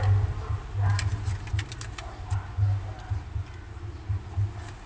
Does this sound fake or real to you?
real